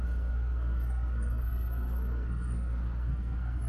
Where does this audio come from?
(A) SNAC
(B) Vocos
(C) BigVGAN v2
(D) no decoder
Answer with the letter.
A